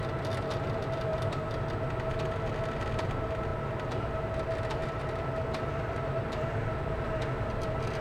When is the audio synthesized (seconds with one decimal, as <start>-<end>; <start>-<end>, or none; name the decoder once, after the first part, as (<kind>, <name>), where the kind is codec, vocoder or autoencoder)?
none